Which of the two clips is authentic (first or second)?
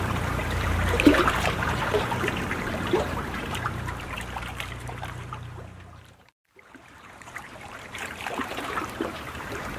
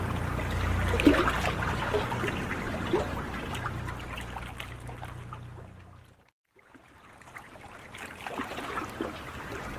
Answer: second